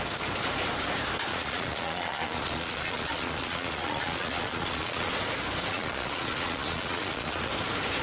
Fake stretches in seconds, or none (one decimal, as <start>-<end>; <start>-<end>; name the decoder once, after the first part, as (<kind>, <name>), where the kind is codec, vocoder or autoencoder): 1.3-5.1 (vocoder, Vocos); 5.7-7.5